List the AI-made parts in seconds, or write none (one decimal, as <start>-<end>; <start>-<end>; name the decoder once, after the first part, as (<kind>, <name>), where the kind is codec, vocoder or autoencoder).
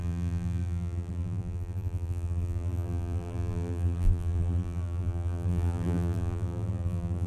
0.0-7.3 (vocoder, BigVGAN v2)